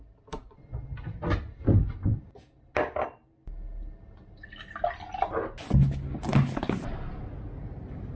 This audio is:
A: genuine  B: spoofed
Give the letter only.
A